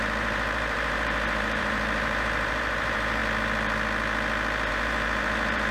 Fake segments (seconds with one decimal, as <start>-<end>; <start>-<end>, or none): 0.0-3.2; 4.7-5.7